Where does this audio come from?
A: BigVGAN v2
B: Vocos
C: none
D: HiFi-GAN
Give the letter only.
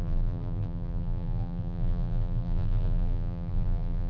A